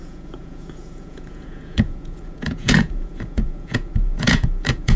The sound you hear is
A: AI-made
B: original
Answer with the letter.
A